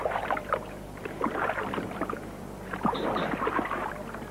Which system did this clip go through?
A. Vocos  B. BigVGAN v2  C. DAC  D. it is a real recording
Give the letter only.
B